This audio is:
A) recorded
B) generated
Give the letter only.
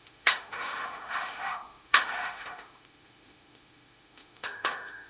B